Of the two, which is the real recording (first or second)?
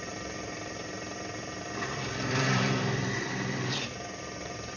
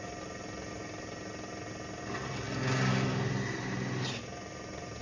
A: second